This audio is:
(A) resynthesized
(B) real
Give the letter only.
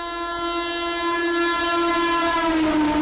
B